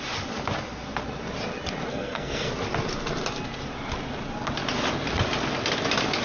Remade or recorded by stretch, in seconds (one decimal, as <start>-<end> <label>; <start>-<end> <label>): 0.0-1.9 recorded; 1.9-2.5 remade; 2.5-6.2 recorded